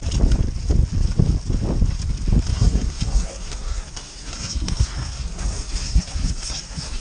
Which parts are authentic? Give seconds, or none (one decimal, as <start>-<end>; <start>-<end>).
0.0-2.5